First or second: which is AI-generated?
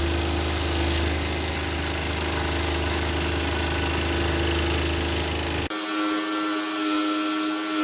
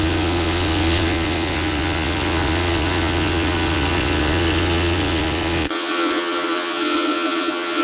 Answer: second